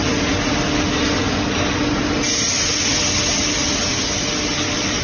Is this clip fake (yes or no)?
no